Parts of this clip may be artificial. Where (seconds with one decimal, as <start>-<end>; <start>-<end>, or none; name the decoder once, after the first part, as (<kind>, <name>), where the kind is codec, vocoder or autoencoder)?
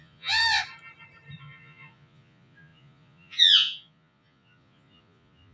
0.0-0.4 (vocoder, Vocos); 1.4-5.5